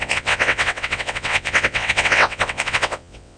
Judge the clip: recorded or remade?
remade